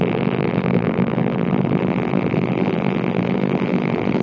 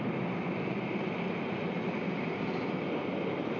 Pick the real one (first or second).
second